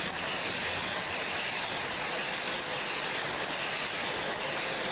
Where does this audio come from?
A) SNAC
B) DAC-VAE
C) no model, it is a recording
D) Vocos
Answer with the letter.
C